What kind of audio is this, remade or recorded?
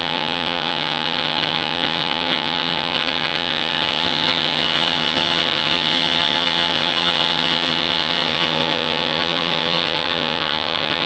remade